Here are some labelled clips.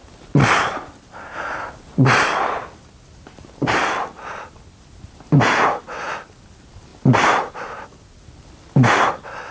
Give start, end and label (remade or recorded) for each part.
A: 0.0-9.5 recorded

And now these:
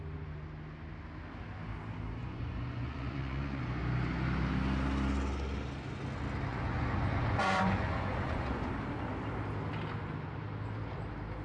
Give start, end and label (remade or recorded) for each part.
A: 0.0-2.2 recorded; 2.2-3.6 remade; 3.6-6.5 recorded; 6.5-8.7 remade; 8.7-11.4 recorded

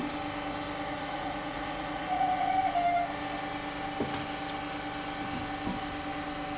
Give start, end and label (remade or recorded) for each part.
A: 0.0-0.9 recorded; 0.9-2.5 remade; 2.5-6.6 recorded

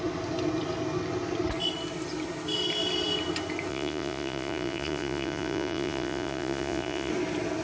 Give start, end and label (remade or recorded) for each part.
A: 0.0-3.7 recorded; 3.7-7.1 remade; 7.1-7.6 recorded